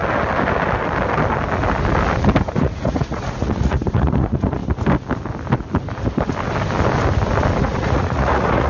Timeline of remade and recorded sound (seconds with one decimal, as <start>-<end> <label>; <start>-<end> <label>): 0.0-2.5 recorded; 2.5-4.6 remade; 4.6-7.6 recorded; 7.6-8.7 remade